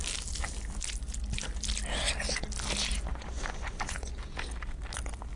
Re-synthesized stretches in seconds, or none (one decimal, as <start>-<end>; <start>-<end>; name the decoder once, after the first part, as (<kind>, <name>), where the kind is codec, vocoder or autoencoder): 3.1-4.2 (vocoder, Vocos)